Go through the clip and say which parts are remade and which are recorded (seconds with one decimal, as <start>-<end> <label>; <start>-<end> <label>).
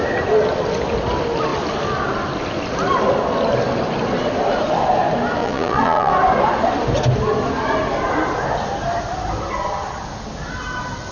0.0-5.4 recorded; 5.4-6.1 remade; 6.1-11.1 recorded